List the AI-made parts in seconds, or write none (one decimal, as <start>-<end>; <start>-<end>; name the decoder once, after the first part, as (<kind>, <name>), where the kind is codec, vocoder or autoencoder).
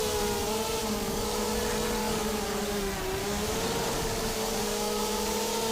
0.8-1.6 (codec, DAC); 2.0-2.8; 3.2-5.7